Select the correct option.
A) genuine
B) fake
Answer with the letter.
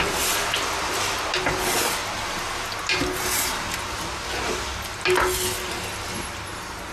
A